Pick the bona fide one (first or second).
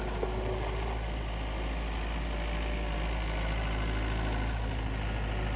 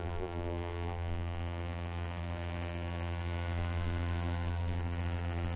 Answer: first